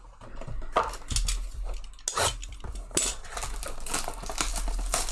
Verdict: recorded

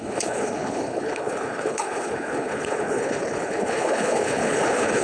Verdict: remade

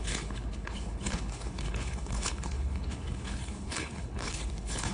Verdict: remade